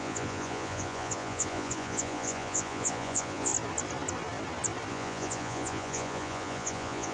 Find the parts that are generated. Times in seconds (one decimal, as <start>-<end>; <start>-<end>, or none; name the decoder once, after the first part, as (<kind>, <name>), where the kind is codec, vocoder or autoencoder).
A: 0.0-3.5 (vocoder, Vocos); 4.9-7.1